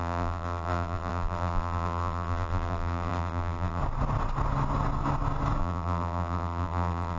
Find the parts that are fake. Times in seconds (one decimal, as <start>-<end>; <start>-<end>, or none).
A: 0.0-3.8; 5.6-7.2